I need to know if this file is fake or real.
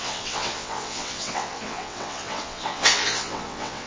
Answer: fake